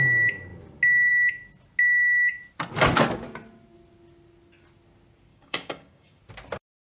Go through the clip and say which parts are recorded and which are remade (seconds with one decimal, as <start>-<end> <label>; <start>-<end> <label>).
0.0-5.3 recorded; 5.3-6.2 remade; 6.2-6.8 recorded